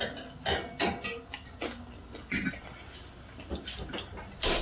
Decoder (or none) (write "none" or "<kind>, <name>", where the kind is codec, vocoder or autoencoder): none